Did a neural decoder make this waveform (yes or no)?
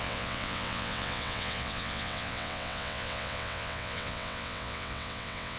yes